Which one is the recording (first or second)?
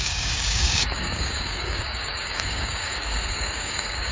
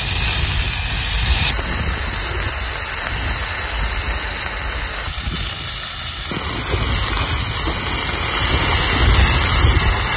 second